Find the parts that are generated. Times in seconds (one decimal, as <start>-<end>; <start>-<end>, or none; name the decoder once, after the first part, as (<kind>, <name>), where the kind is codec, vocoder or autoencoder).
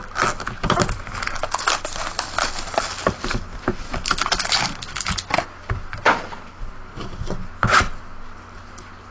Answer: none